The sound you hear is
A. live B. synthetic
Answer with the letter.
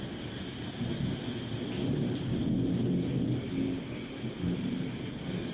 A